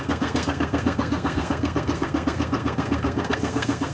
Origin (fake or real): fake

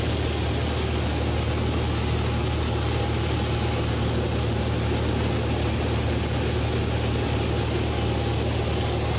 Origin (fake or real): real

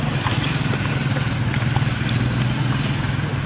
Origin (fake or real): fake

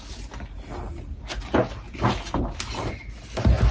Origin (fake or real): real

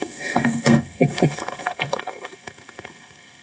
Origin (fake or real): fake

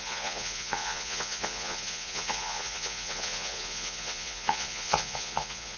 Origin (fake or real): fake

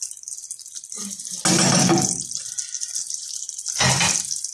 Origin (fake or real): real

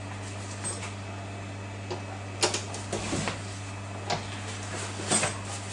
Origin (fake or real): real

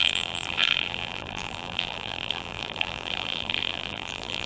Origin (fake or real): fake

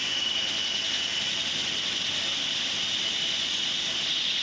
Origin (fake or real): real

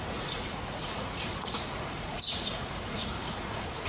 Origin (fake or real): fake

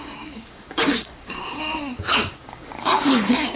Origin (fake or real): fake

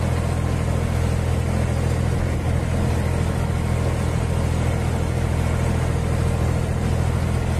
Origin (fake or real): real